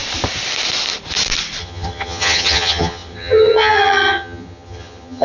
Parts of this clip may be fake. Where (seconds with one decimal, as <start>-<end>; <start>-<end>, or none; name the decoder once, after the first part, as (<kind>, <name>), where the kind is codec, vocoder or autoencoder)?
1.6-5.2 (vocoder, HiFi-GAN)